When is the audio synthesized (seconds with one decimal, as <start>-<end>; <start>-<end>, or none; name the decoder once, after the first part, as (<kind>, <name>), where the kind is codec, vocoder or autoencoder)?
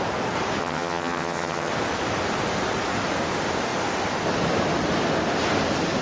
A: 0.6-1.7 (vocoder, HiFi-GAN)